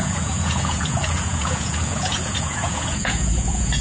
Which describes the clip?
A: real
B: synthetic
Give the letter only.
B